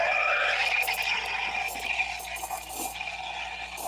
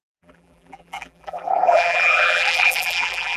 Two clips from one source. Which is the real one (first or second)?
first